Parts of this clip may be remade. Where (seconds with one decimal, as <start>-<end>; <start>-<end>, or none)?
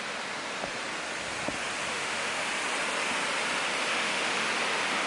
1.9-2.5; 3.9-4.5